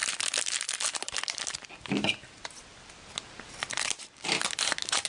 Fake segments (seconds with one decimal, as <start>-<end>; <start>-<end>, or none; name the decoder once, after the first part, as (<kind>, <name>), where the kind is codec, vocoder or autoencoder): 0.0-3.1 (vocoder, BigVGAN v2)